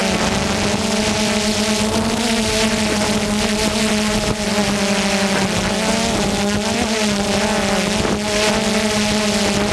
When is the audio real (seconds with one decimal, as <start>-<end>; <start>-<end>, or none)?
0.0-9.7